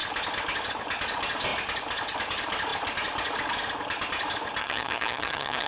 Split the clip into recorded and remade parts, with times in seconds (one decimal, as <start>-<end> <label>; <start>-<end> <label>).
0.0-4.6 recorded; 4.6-5.7 remade